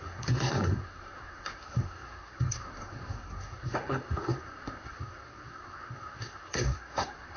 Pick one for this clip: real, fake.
fake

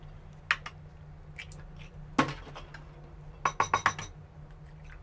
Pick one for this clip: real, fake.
real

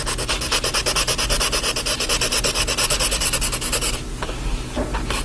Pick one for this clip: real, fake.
real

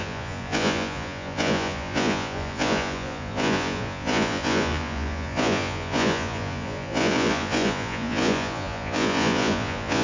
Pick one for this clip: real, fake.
fake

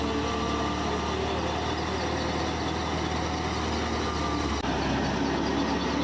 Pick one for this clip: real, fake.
real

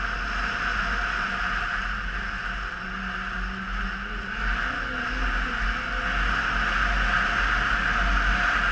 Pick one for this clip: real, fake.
real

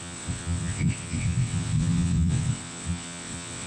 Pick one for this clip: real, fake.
fake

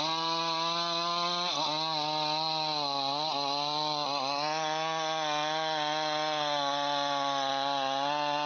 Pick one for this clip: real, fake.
real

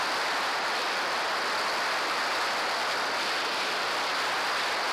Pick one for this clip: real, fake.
real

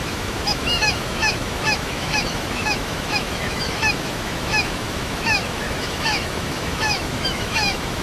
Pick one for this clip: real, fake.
fake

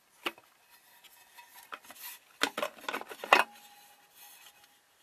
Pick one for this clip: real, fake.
real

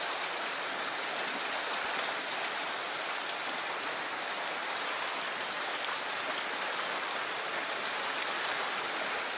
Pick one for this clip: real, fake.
real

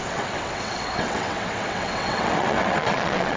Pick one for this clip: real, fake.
fake